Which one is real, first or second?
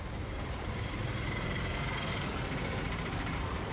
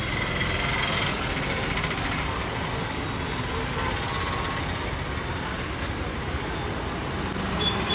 second